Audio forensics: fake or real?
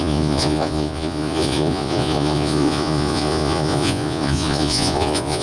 fake